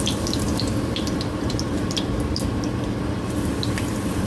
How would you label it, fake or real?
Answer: fake